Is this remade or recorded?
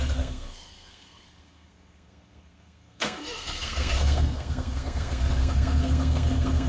remade